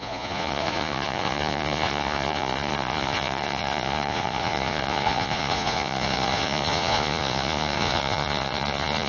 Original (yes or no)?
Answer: no